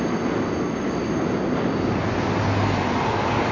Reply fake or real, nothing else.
real